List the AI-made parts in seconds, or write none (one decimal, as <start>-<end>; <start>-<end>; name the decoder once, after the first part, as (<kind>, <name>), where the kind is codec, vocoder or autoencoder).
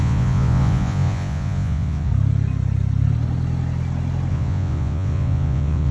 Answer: 0.0-2.1 (vocoder, Vocos); 4.3-5.9